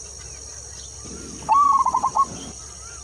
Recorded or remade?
recorded